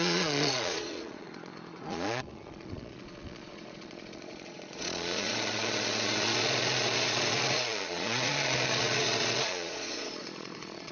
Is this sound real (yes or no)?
no